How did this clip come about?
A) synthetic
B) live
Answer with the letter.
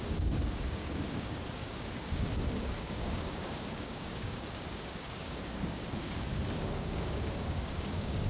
A